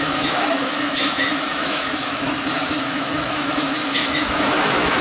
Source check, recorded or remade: remade